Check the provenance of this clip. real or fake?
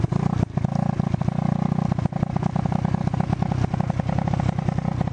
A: real